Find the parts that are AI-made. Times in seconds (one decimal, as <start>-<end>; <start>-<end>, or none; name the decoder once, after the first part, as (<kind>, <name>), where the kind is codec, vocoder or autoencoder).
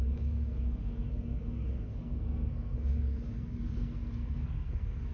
0.0-5.1 (codec, SNAC)